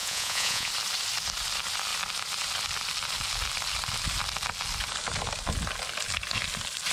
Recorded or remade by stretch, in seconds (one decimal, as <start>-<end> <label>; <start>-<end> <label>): 0.0-0.7 remade; 0.7-6.9 recorded